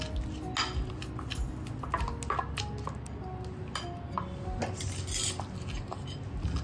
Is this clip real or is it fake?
real